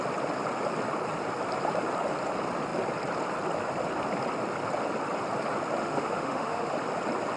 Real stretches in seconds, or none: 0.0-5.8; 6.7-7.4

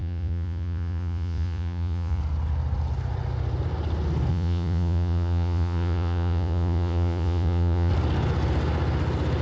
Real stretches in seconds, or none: 2.2-4.3; 7.9-9.4

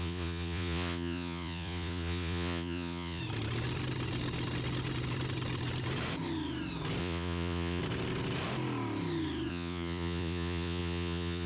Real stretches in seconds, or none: 3.2-7.0; 7.8-9.5

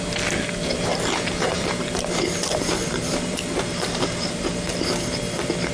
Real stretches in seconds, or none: 0.0-1.5; 4.7-5.7

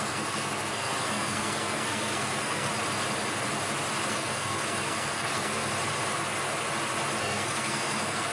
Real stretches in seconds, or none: 2.7-4.1; 5.7-7.2

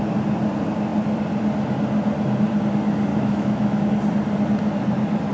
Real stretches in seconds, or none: 0.0-3.1; 3.9-5.3